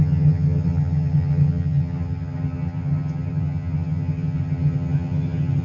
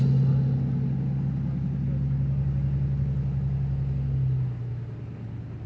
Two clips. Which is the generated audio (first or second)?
first